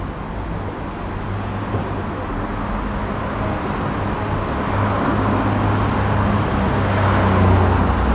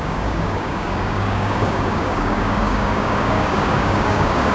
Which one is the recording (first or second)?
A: first